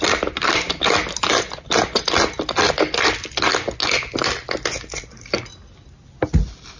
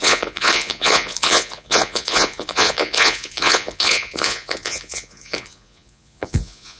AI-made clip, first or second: second